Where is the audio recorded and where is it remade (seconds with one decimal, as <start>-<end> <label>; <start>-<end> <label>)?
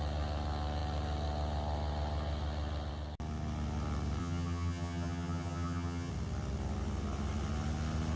0.0-4.2 recorded; 4.2-6.1 remade; 6.1-8.2 recorded